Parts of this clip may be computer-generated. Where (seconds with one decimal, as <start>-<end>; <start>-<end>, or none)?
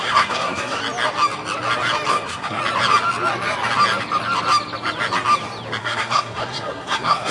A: 0.0-0.8; 2.1-2.6; 5.8-7.3